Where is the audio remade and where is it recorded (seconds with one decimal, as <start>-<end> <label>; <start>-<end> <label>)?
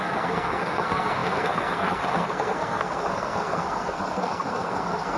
0.0-5.2 remade